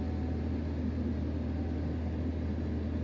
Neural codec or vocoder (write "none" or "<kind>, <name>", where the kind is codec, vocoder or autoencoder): none